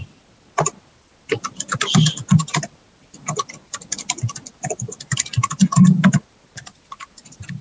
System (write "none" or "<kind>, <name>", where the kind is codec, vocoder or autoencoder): none